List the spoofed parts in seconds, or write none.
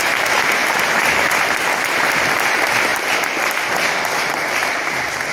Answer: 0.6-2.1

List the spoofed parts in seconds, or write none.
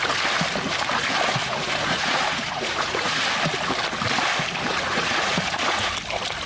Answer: 1.4-3.2; 4.7-5.9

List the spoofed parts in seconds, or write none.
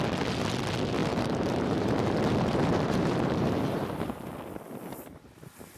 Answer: 1.0-4.3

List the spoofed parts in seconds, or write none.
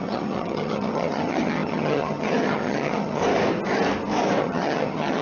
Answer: 0.0-3.2; 4.4-5.2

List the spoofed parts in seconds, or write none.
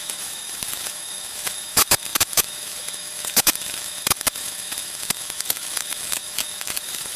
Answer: 0.0-7.2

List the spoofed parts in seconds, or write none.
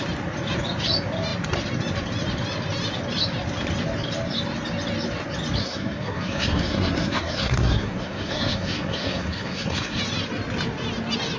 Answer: 5.6-10.0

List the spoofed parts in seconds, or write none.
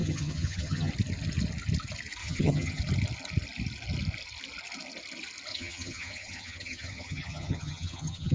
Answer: 0.0-0.9; 2.2-2.8; 5.5-8.3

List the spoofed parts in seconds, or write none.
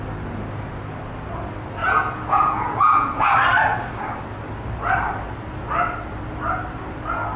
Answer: 1.8-3.3